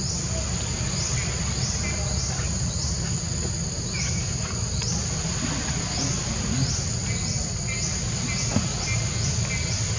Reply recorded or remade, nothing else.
recorded